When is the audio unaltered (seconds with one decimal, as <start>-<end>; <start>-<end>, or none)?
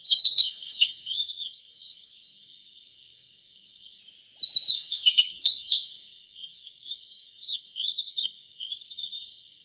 4.0-4.7